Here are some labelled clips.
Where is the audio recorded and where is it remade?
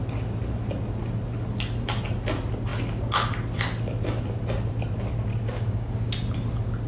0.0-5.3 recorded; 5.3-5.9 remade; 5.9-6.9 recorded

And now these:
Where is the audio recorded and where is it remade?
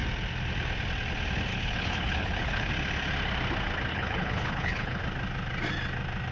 0.0-1.5 recorded; 1.5-2.7 remade; 2.7-3.9 recorded; 3.9-5.0 remade; 5.0-6.3 recorded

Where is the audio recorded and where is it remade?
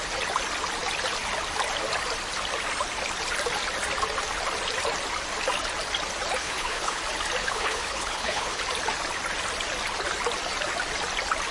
0.0-6.4 recorded; 6.4-7.0 remade; 7.0-7.4 recorded; 7.4-8.6 remade; 8.6-11.5 recorded